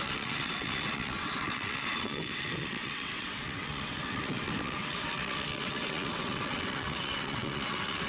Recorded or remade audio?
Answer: remade